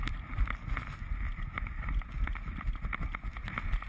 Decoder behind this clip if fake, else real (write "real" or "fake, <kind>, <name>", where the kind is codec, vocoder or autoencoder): real